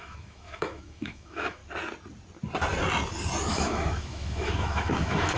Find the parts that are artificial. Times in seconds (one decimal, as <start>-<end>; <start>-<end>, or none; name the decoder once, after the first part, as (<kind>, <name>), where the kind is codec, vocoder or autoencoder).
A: 0.0-1.6 (autoencoder, DAC-VAE); 3.5-5.4